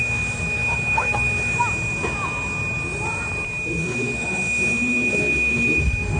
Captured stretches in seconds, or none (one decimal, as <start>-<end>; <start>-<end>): 1.5-3.8